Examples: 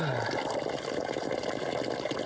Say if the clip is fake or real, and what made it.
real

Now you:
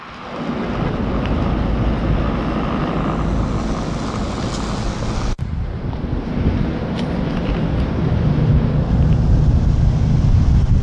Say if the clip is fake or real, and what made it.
real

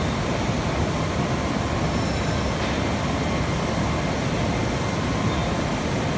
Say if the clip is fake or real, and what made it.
real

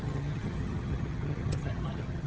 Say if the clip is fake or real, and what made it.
fake, vocoder, HiFi-GAN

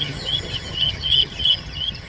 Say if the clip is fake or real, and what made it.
fake, vocoder, HiFi-GAN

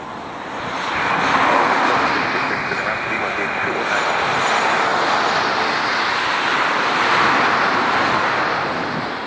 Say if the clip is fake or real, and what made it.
real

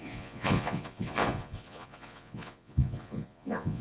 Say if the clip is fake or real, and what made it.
fake, vocoder, Vocos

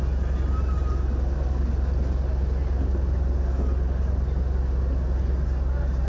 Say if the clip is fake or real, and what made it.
real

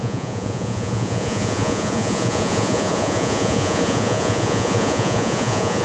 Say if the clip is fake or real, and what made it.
fake, vocoder, Vocos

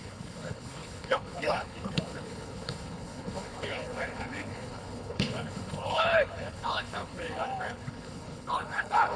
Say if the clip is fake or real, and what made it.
fake, codec, HILCodec